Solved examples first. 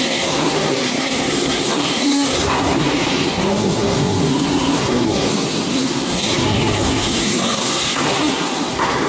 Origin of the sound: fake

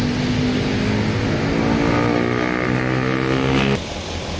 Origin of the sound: real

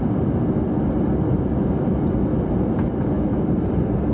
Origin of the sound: real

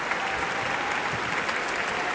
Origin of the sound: real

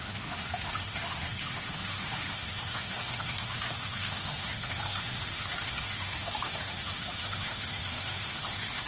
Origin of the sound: fake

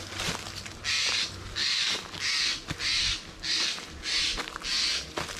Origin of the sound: real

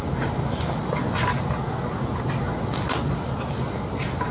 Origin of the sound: real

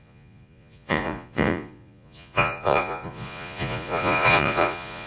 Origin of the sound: fake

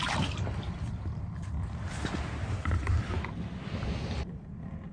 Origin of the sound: real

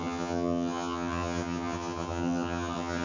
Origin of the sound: fake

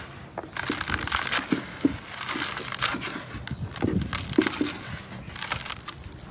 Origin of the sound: real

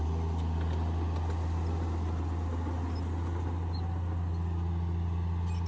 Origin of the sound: real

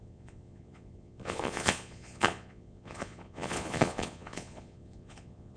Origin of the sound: fake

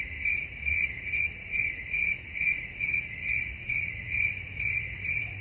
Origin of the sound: fake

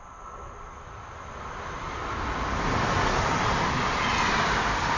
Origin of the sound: real